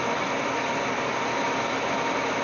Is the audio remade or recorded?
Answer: recorded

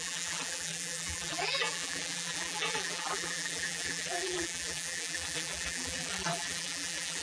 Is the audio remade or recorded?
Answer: remade